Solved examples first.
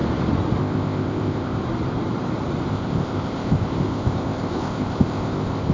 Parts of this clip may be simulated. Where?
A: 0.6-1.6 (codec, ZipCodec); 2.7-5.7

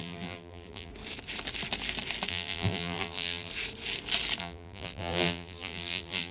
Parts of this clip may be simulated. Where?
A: 0.0-0.9 (vocoder, BigVGAN v2); 2.3-3.5; 4.4-6.3

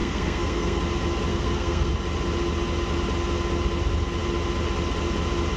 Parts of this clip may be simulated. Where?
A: 0.0-0.8 (codec, SNAC); 1.3-1.9

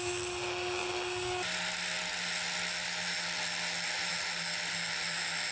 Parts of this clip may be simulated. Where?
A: none

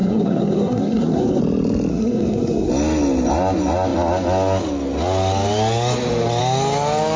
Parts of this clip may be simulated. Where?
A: 0.0-1.4 (codec, SNAC); 1.9-2.7

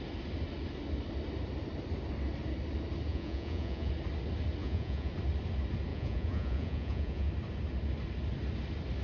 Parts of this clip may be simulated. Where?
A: 3.1-3.9 (vocoder, Vocos); 4.6-5.1; 5.9-7.3

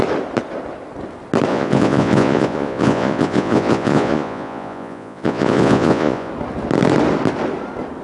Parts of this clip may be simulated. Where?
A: 1.5-6.3 (vocoder, Vocos)